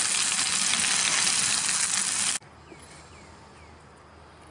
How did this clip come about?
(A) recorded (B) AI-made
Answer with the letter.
A